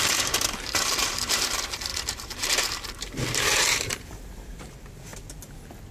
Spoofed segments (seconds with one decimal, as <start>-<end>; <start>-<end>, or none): 0.0-5.1